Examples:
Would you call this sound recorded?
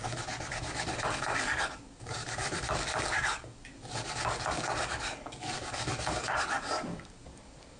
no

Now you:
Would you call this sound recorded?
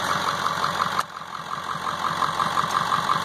yes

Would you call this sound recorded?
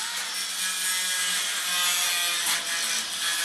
yes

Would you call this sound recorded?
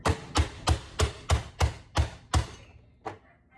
yes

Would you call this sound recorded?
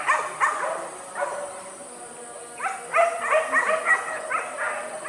yes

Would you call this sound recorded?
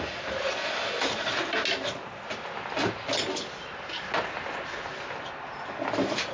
yes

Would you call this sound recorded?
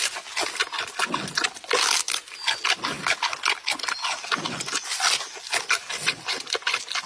yes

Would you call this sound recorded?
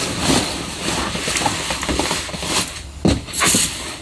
yes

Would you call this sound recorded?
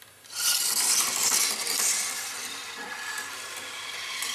yes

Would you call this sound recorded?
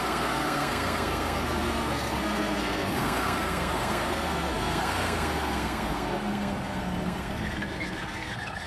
no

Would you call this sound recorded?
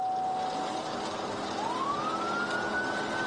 yes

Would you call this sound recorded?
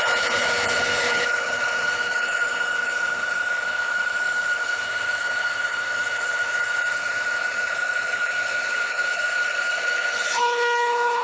no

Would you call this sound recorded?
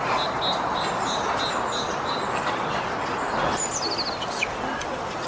yes